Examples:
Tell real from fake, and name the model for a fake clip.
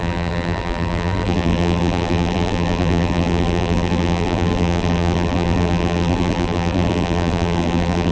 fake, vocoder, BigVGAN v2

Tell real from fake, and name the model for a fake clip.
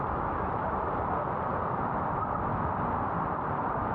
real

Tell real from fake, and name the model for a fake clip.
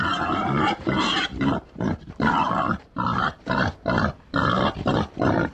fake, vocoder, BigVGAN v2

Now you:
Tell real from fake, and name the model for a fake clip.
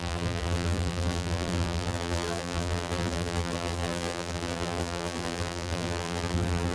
fake, vocoder, BigVGAN v2